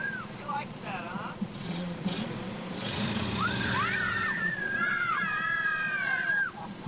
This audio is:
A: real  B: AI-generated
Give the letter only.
B